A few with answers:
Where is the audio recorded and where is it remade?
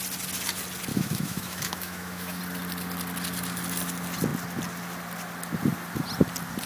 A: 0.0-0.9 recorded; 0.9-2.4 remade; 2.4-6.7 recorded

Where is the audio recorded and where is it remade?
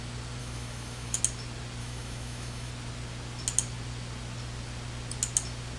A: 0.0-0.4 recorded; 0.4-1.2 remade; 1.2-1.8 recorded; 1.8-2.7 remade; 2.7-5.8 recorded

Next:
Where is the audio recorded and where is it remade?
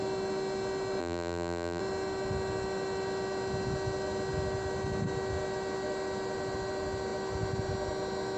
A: 0.0-1.0 recorded; 1.0-1.8 remade; 1.8-8.4 recorded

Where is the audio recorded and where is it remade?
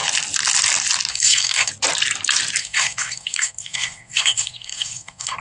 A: 0.0-1.1 recorded; 1.1-1.7 remade; 1.7-2.6 recorded; 2.6-5.4 remade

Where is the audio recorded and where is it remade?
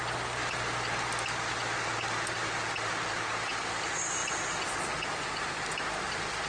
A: 0.0-6.5 recorded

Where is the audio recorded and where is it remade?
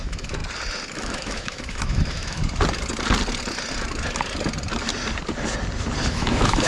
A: 0.0-0.4 remade; 0.4-0.9 recorded; 0.9-2.4 remade; 2.4-6.1 recorded; 6.1-6.7 remade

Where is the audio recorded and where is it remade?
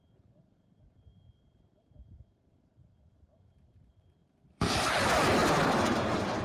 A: 0.0-4.2 remade; 4.2-4.7 recorded; 4.7-6.4 remade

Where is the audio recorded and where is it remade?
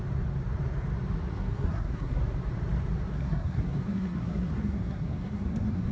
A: 0.0-1.3 recorded; 1.3-2.2 remade; 2.2-3.1 recorded; 3.1-5.9 remade